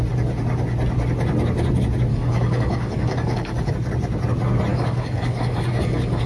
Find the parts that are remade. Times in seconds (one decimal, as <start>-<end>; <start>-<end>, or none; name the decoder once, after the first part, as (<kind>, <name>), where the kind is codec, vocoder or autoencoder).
2.1-3.7 (codec, DAC); 4.7-6.3